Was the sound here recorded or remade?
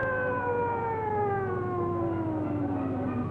recorded